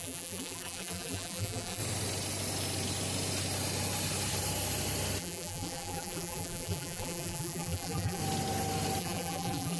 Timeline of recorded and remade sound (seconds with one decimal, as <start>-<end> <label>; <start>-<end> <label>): 0.0-1.8 remade; 1.8-5.2 recorded; 5.2-8.2 remade; 8.2-9.0 recorded; 9.0-9.8 remade